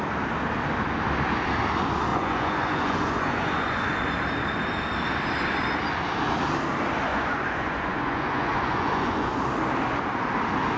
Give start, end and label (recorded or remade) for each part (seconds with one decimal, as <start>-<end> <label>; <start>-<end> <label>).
0.0-2.1 recorded; 2.1-4.0 remade; 4.0-7.1 recorded; 7.1-9.3 remade; 9.3-10.8 recorded